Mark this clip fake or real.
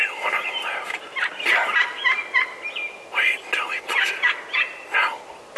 real